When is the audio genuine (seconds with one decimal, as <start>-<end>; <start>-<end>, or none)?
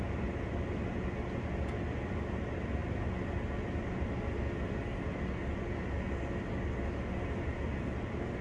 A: 0.0-8.4